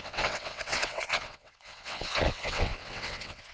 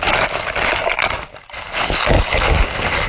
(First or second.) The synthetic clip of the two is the first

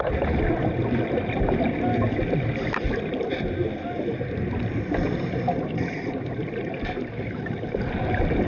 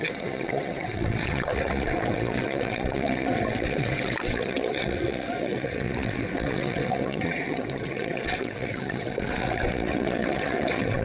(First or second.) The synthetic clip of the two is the second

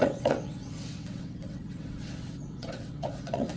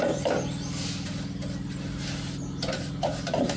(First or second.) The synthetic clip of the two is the first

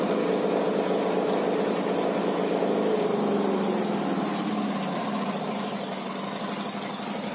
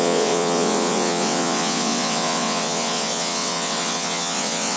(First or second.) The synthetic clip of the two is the second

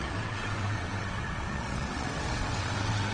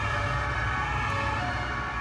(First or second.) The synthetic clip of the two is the first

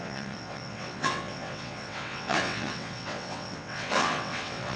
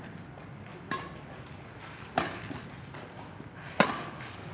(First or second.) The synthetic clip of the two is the first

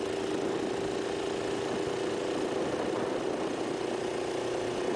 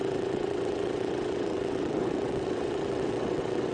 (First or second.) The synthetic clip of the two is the second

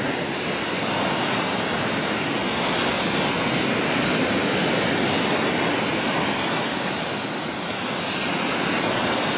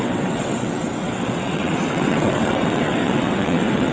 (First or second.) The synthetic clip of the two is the second